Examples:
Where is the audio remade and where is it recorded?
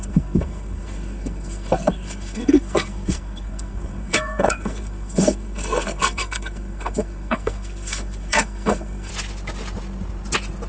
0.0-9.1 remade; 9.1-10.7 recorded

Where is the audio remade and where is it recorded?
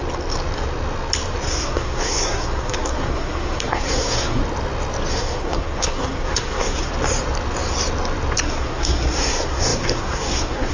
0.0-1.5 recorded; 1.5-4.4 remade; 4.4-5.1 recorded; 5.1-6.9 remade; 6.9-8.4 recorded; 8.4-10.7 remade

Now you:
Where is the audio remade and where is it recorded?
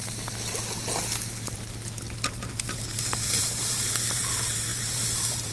0.0-2.3 recorded; 2.3-5.5 remade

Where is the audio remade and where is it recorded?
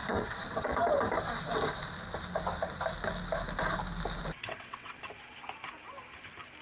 0.0-0.7 remade; 0.7-4.4 recorded; 4.4-5.0 remade; 5.0-6.6 recorded